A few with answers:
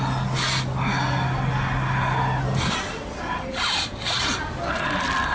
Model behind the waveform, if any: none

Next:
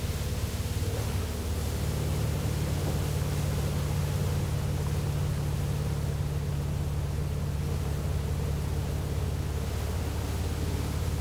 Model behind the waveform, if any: none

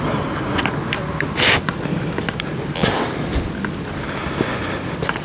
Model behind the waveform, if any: none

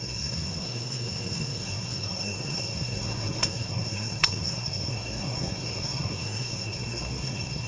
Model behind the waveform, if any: codec, SNAC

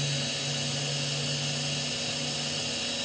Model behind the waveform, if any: none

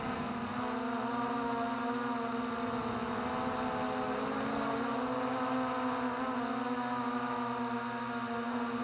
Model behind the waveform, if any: none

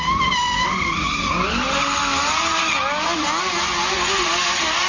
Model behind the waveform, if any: none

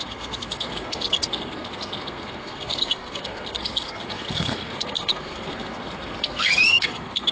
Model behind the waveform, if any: codec, SNAC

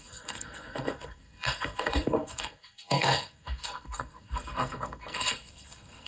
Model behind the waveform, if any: codec, SNAC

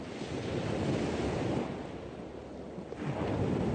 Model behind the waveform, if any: none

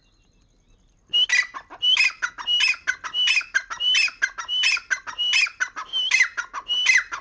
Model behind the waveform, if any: none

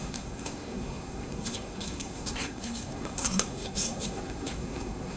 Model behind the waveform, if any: codec, SNAC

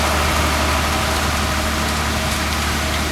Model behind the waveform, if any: none